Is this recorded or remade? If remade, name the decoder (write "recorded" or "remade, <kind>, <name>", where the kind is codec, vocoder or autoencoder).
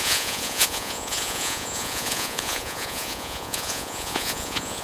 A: remade, vocoder, Vocos